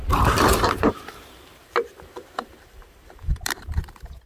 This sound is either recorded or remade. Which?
remade